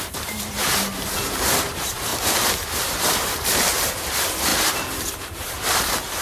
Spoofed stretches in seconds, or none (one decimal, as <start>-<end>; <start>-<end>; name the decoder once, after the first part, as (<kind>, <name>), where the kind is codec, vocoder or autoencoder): 0.0-2.1 (vocoder, BigVGAN v2); 2.8-4.5; 5.2-6.2